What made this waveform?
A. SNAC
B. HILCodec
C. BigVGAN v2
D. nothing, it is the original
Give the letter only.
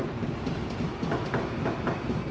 D